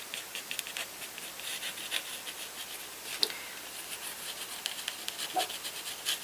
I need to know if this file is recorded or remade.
recorded